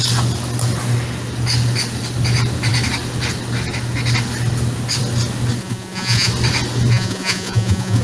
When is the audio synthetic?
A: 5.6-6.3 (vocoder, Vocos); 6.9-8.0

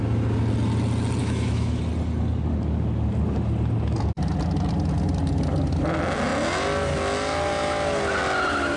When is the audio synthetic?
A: 1.2-1.8 (autoencoder, DAC-VAE)